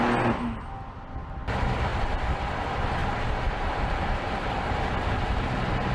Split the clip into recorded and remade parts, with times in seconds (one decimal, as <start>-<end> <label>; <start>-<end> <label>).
0.0-1.9 recorded; 1.9-2.5 remade; 2.5-3.0 recorded; 3.0-4.7 remade; 4.7-5.9 recorded